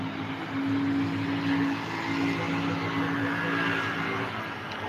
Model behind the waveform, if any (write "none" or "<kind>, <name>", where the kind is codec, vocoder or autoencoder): none